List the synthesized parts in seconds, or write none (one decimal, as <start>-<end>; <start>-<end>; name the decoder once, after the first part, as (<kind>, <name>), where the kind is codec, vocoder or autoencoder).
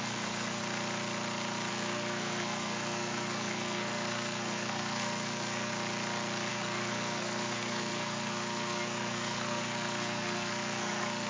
0.0-0.6 (codec, SNAC); 1.7-5.7; 6.5-11.3